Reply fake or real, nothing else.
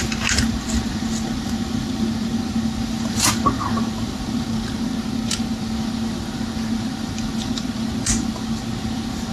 real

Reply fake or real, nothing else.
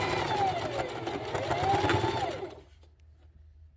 real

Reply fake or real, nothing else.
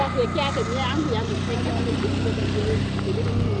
real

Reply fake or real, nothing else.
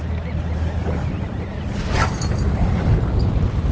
real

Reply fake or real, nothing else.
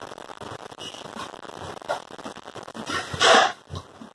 real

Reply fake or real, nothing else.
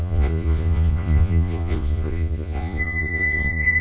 fake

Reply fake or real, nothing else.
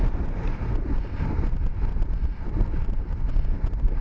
real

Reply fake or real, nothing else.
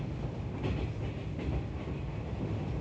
real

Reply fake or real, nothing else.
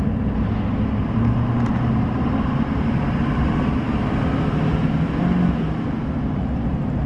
real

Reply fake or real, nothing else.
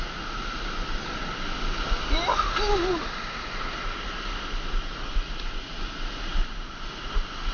real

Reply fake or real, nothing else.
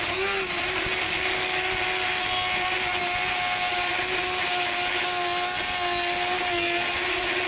real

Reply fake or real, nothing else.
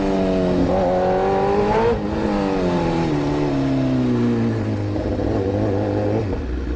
real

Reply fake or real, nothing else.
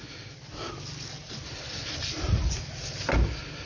real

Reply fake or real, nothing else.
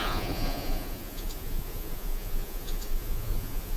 fake